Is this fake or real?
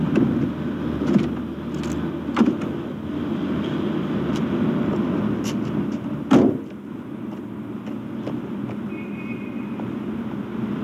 real